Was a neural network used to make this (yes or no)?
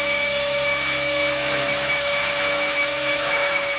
yes